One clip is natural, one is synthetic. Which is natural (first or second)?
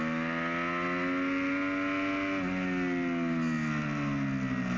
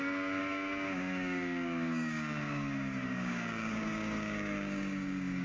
first